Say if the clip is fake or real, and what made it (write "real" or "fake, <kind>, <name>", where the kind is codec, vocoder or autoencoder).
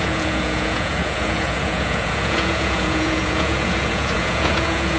fake, vocoder, Vocos